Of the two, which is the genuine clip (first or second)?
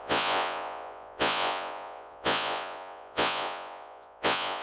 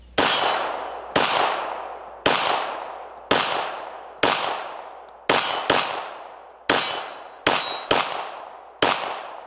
second